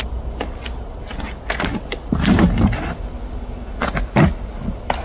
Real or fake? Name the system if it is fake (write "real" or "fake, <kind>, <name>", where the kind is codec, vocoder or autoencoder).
real